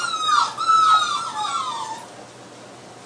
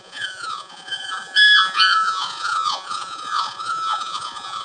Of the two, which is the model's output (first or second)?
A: second